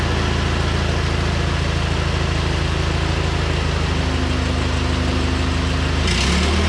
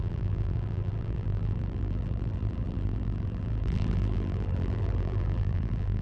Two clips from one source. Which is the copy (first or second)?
second